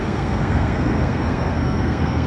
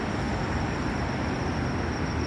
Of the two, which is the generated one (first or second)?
first